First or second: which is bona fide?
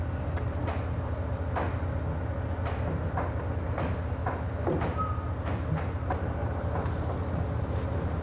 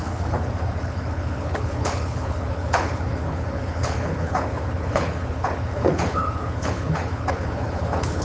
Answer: first